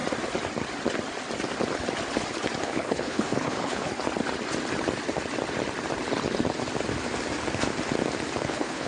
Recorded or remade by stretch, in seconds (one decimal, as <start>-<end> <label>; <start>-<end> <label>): 0.0-2.6 recorded; 2.6-3.9 remade; 3.9-8.5 recorded; 8.5-8.9 remade